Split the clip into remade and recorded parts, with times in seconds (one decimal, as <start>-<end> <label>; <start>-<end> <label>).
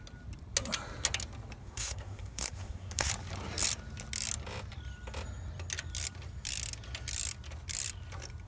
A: 0.0-1.6 recorded; 1.6-3.1 remade; 3.1-8.5 recorded